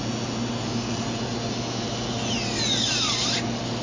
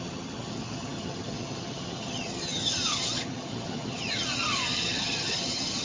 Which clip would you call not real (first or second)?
second